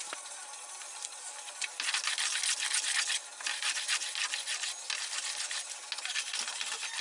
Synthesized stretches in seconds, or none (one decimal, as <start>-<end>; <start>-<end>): none